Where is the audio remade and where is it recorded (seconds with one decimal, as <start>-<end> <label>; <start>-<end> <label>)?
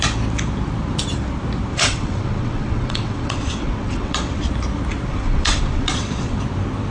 0.0-1.7 recorded; 1.7-4.5 remade; 4.5-5.1 recorded; 5.1-6.4 remade; 6.4-6.9 recorded